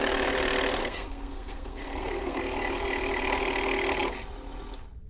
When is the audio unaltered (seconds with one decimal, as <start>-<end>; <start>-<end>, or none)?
0.0-0.8; 2.4-5.1